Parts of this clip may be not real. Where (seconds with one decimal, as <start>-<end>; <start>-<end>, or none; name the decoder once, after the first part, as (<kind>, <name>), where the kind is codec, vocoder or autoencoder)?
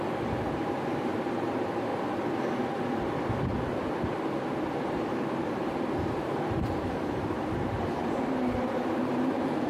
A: 0.0-1.9 (vocoder, BigVGAN v2); 4.8-9.7